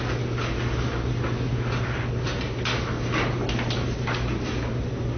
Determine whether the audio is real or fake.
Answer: real